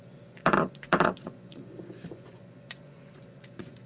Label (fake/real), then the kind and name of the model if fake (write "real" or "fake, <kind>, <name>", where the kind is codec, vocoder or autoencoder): fake, vocoder, Vocos